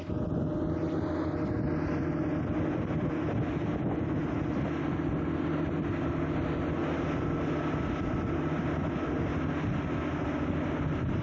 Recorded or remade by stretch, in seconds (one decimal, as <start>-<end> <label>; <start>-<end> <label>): 0.0-11.2 recorded